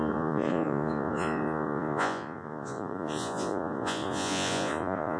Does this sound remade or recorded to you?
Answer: remade